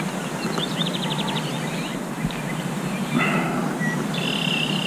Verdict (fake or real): real